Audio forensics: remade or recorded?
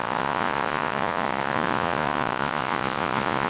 remade